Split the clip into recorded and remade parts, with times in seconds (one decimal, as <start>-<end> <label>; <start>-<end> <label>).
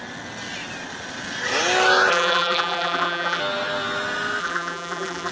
0.0-2.1 recorded; 2.1-3.4 remade; 3.4-4.4 recorded; 4.4-5.3 remade